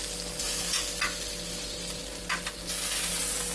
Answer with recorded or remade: recorded